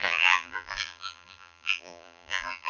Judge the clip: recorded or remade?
remade